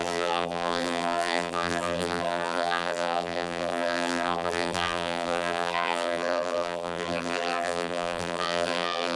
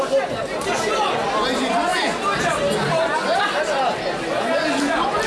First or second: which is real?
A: second